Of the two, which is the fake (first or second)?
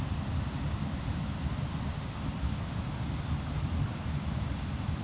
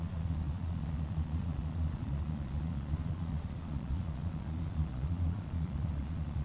second